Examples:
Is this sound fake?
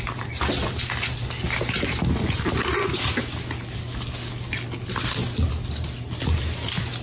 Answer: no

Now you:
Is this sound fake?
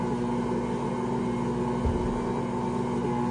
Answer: no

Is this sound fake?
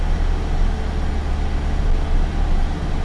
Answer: no